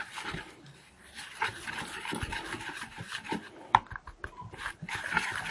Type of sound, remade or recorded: recorded